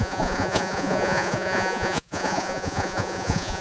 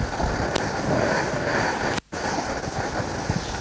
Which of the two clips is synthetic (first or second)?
first